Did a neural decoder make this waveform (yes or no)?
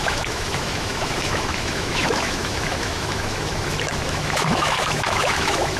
yes